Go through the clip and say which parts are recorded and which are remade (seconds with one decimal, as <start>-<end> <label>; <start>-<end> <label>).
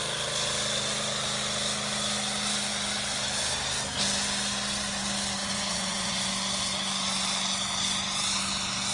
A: 0.0-5.4 recorded; 5.4-6.3 remade; 6.3-8.9 recorded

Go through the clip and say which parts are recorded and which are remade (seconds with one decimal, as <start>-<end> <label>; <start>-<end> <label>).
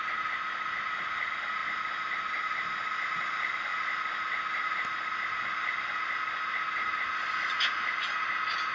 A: 0.0-8.7 recorded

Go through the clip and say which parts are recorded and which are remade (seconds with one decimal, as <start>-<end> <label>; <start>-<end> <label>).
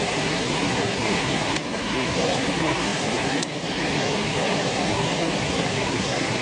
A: 0.0-6.4 remade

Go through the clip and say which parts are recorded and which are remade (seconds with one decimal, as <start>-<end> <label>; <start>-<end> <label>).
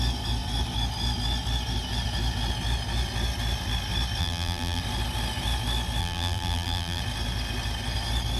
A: 0.0-4.2 recorded; 4.2-4.8 remade; 4.8-6.0 recorded; 6.0-7.0 remade; 7.0-8.4 recorded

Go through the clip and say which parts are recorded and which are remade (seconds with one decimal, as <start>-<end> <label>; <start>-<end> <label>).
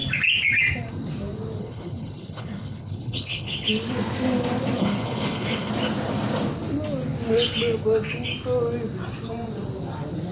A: 0.0-1.6 recorded; 1.6-3.7 remade; 3.7-4.8 recorded; 4.8-5.7 remade; 5.7-10.3 recorded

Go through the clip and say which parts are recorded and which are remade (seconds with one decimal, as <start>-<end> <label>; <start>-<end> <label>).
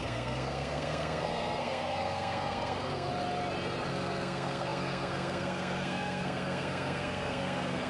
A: 0.0-3.1 remade; 3.1-3.9 recorded; 3.9-7.9 remade